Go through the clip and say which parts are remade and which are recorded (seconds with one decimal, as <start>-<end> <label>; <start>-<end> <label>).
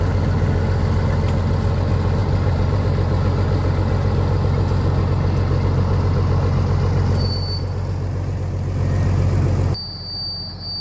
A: 0.0-2.2 recorded; 2.2-2.8 remade; 2.8-10.8 recorded